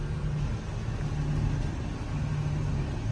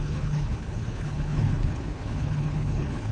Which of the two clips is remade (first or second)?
second